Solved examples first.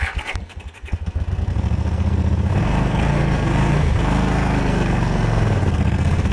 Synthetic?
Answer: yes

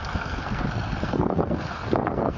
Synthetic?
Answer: yes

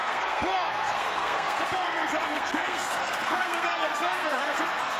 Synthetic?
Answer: yes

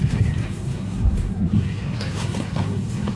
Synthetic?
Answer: yes